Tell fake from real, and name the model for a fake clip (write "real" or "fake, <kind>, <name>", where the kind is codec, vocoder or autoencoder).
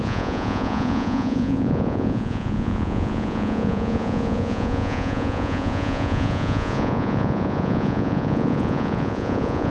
fake, vocoder, Vocos